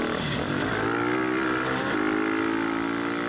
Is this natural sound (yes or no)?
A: yes